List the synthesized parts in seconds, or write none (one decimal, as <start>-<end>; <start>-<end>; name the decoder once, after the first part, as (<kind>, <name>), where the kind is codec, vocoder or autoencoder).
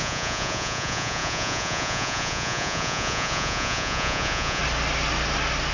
0.0-4.6 (vocoder, Vocos)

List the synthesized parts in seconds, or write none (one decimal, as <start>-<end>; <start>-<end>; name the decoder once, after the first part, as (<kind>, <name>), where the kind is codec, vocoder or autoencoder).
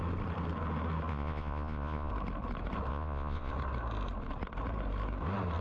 1.1-2.1 (vocoder, Vocos); 2.9-3.5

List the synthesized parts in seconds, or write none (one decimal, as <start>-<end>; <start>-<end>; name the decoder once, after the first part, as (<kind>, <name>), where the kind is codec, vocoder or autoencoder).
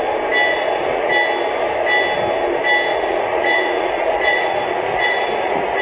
0.5-1.1 (vocoder, Vocos); 2.9-5.8